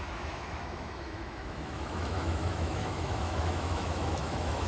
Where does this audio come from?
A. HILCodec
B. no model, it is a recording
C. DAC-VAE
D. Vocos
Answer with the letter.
C